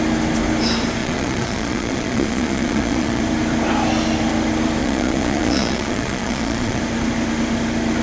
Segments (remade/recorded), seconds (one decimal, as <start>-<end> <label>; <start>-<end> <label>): 0.0-1.0 recorded; 1.0-3.2 remade; 3.2-4.8 recorded; 4.8-6.8 remade; 6.8-8.0 recorded